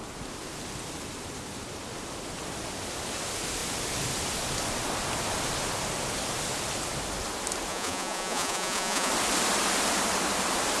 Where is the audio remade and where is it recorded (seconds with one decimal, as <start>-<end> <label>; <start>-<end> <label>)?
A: 0.0-7.7 recorded; 7.7-9.1 remade; 9.1-10.8 recorded